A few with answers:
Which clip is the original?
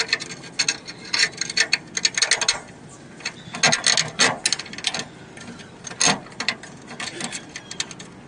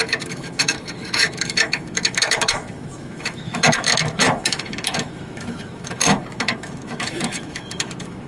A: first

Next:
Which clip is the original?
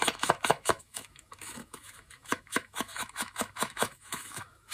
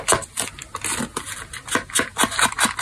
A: second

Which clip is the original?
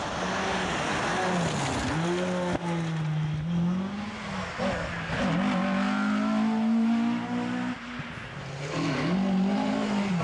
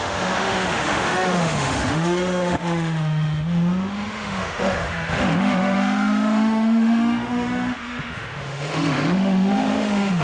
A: first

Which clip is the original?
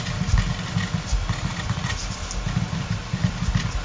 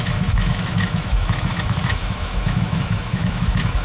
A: first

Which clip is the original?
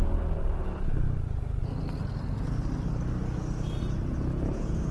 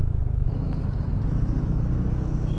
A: first